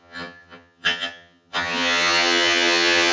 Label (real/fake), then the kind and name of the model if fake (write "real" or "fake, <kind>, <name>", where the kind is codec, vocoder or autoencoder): fake, vocoder, HiFi-GAN